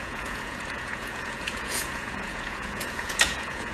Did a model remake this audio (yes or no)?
yes